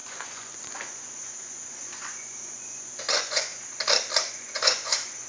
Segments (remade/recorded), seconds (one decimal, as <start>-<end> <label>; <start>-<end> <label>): 0.0-3.5 remade; 3.5-4.3 recorded; 4.3-5.3 remade